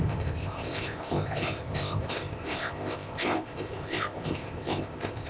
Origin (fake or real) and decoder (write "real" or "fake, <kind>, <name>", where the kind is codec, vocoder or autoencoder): fake, codec, ZipCodec